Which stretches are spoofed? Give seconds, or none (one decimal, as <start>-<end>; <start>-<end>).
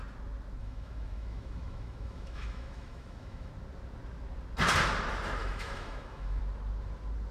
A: 0.6-3.5; 5.4-6.4